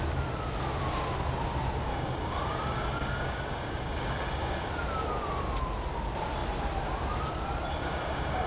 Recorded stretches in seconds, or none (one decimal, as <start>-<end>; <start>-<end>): 0.0-1.9; 4.7-7.7